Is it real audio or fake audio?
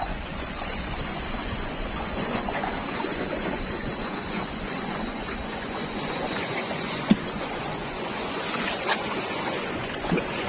fake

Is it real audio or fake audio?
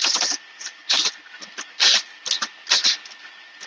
real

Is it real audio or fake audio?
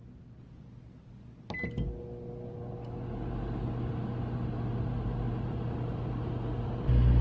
real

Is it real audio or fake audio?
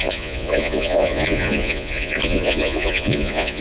fake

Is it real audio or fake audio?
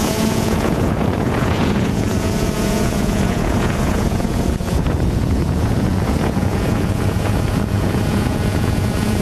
fake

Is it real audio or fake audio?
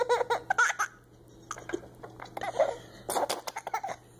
real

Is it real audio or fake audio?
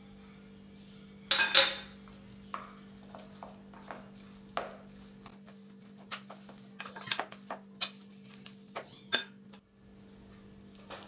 real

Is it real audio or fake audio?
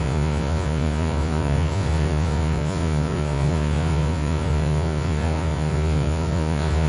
fake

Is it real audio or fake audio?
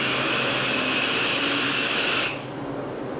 real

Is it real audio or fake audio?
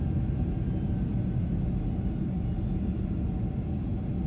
real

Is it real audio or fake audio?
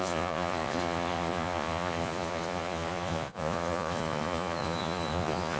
fake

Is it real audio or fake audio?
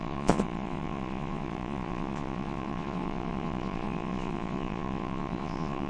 fake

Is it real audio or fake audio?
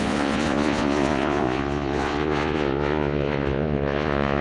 fake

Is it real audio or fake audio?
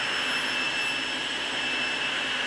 real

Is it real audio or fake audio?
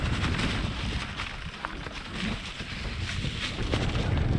real